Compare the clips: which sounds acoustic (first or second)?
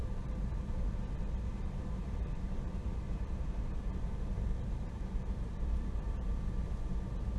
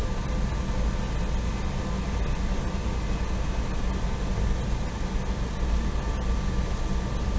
second